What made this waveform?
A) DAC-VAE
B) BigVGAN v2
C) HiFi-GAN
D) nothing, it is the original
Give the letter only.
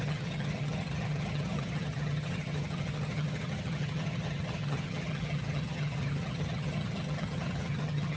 C